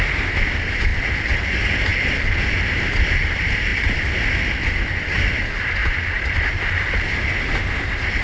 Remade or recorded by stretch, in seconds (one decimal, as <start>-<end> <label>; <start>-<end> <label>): 0.0-5.8 recorded; 5.8-6.6 remade; 6.6-8.2 recorded